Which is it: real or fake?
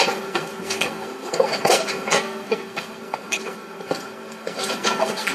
fake